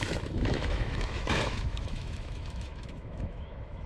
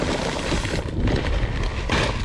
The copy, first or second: first